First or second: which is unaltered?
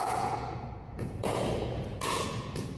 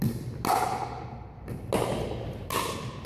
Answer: second